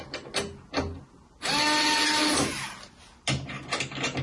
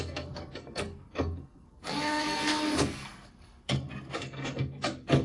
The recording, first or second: first